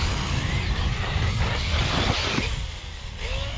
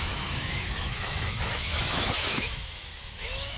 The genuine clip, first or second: first